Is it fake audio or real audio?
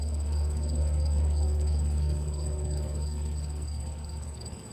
fake